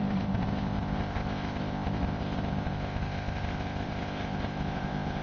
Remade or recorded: remade